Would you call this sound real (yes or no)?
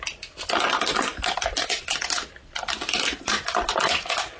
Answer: yes